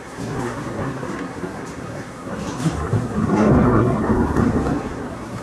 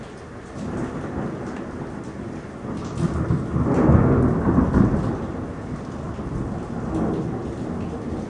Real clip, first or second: second